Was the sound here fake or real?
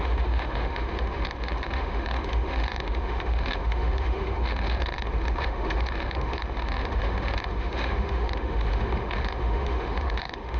fake